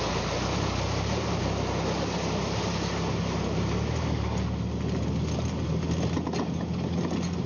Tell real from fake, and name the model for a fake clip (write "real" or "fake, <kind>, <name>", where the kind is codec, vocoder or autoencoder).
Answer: real